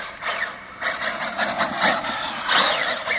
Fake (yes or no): no